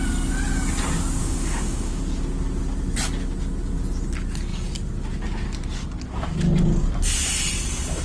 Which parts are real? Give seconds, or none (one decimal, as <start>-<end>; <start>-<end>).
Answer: 0.0-1.2; 2.0-8.0